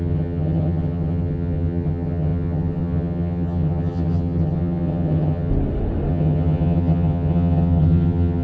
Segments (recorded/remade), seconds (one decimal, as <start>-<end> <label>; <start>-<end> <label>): 0.0-5.5 remade; 5.5-6.1 recorded; 6.1-8.4 remade